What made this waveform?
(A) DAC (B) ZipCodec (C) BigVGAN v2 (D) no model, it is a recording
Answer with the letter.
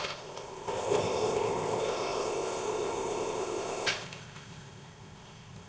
B